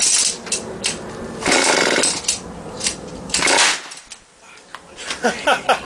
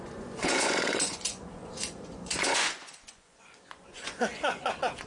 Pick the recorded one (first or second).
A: first